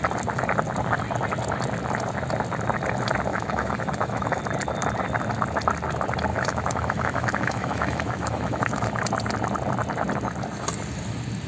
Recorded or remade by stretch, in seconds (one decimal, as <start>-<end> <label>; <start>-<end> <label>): 0.0-3.3 recorded; 3.3-4.4 remade; 4.4-6.3 recorded; 6.3-9.0 remade; 9.0-11.5 recorded